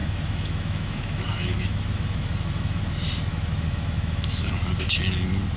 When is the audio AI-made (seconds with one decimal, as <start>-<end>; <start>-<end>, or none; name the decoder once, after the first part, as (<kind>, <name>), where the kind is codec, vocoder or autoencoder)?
0.0-2.8 (autoencoder, DAC-VAE); 3.3-4.5